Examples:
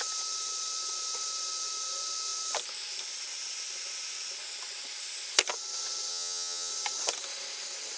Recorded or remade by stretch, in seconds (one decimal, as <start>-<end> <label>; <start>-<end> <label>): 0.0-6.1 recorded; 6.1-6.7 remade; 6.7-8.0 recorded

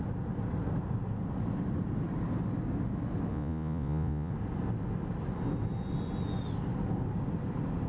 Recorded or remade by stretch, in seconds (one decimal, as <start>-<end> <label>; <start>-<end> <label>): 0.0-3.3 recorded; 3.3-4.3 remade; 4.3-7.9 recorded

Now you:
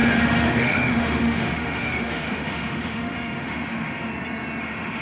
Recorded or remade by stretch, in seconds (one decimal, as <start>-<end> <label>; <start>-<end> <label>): 0.0-4.1 remade; 4.1-4.6 recorded; 4.6-5.0 remade

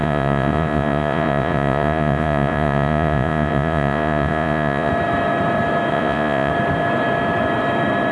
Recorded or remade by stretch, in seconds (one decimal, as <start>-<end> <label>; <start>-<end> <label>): 0.0-4.9 remade; 4.9-5.9 recorded; 5.9-6.5 remade; 6.5-8.1 recorded

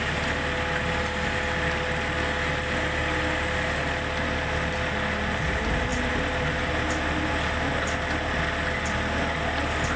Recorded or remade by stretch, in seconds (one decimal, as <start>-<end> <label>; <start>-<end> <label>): 0.0-10.0 recorded

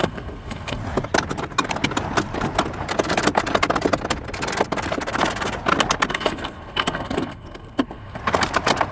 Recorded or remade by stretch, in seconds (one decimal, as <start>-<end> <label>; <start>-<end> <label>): 0.0-0.8 remade; 0.8-6.1 recorded; 6.1-8.2 remade; 8.2-8.9 recorded

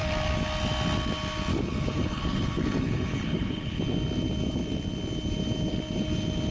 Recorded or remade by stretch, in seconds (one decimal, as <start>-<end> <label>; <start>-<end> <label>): 0.0-1.5 recorded; 1.5-3.8 remade; 3.8-6.5 recorded

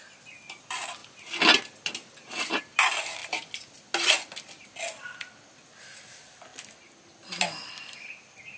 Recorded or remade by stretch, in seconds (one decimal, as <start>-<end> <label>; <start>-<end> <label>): 0.0-8.6 recorded